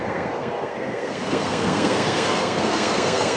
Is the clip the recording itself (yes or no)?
no